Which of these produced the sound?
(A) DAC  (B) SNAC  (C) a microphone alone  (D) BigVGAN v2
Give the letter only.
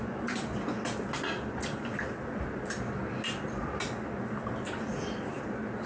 C